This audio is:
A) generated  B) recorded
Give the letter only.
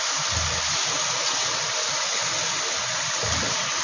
B